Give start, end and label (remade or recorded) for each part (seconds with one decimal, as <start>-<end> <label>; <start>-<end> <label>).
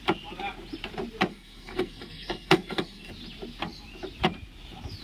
0.0-1.3 recorded; 1.3-3.1 remade; 3.1-5.0 recorded